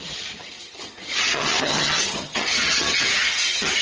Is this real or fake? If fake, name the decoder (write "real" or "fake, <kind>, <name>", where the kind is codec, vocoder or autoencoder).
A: fake, vocoder, HiFi-GAN